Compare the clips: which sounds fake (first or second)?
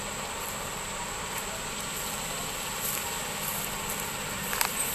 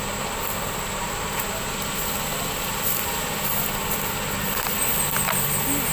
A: first